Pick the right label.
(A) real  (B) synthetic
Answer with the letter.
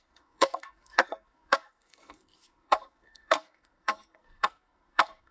B